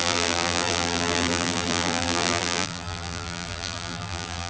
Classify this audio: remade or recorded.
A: remade